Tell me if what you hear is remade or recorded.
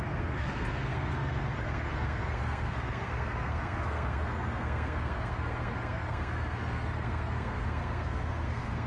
remade